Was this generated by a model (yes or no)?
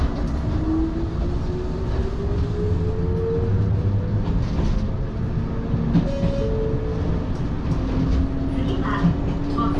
no